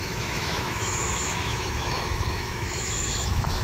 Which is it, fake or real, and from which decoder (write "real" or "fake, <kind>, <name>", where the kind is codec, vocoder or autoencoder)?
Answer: fake, autoencoder, DAC-VAE